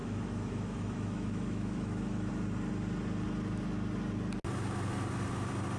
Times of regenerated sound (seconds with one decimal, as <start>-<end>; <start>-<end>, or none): 0.0-2.3